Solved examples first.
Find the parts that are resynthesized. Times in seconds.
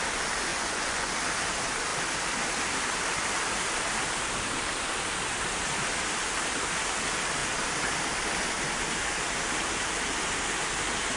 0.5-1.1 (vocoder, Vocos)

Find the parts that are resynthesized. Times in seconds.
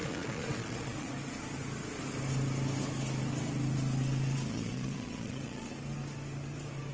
0.0-1.1 (vocoder, Vocos); 4.5-5.7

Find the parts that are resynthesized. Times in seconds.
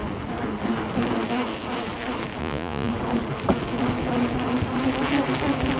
2.4-2.9 (vocoder, Vocos)